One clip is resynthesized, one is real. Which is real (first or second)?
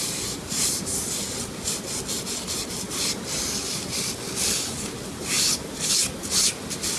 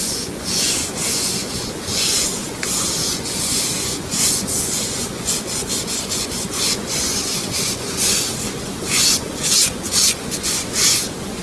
first